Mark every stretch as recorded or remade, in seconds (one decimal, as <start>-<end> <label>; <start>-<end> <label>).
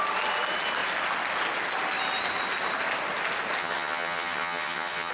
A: 0.0-3.6 recorded; 3.6-5.1 remade